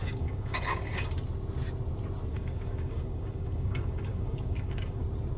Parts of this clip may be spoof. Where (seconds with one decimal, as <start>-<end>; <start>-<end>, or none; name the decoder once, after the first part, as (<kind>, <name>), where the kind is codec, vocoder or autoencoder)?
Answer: 0.0-1.1 (codec, DAC); 2.3-5.0